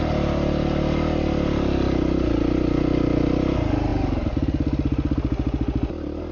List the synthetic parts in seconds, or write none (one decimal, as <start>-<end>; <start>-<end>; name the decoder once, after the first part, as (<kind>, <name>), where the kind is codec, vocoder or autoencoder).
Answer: none